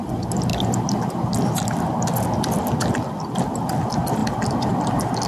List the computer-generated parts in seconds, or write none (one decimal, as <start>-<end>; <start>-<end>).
none